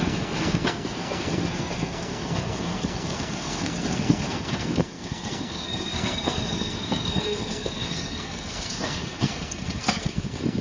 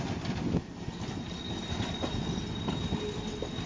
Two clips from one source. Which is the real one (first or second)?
second